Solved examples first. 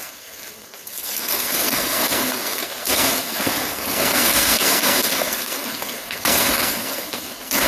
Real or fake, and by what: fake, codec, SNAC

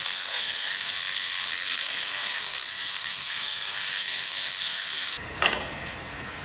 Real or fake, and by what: fake, codec, SNAC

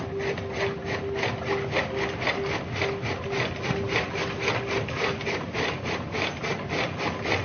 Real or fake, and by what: real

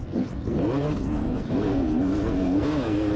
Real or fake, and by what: fake, codec, SNAC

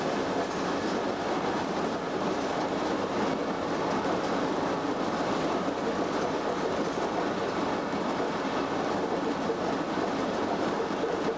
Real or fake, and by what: real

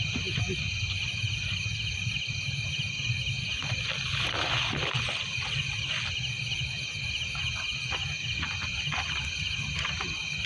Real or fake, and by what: real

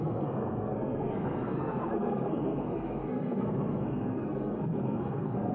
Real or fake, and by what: fake, codec, SNAC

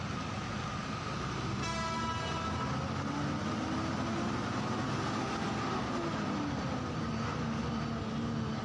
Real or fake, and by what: real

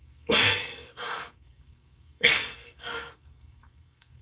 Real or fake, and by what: fake, codec, SNAC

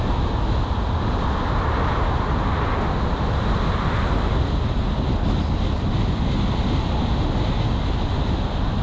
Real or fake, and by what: real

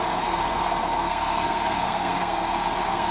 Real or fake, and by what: fake, codec, SNAC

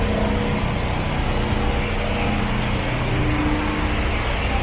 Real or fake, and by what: real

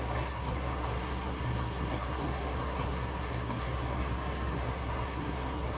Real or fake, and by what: fake, codec, SNAC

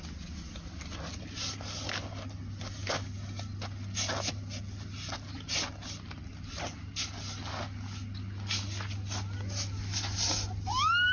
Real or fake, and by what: real